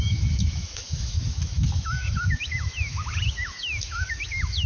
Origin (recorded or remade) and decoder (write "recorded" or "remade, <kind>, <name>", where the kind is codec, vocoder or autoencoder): remade, autoencoder, DAC-VAE